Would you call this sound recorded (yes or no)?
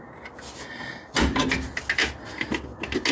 yes